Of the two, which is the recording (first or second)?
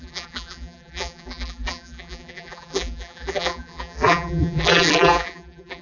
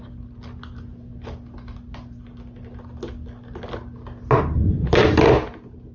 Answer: second